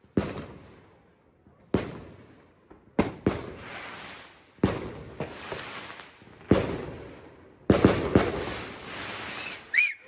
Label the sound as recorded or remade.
recorded